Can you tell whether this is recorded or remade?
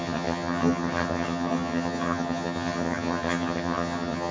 remade